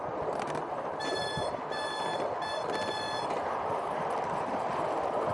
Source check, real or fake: real